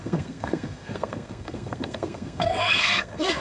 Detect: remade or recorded remade